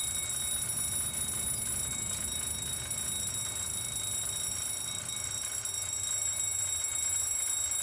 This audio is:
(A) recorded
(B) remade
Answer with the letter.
A